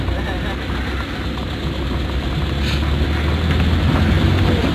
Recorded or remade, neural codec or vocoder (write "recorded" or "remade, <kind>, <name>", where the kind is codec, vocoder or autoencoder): recorded